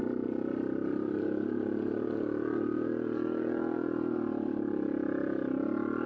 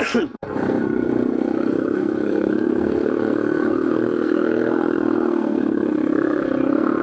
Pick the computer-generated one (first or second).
second